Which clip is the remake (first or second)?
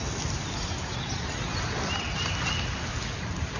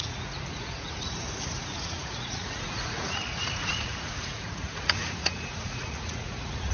second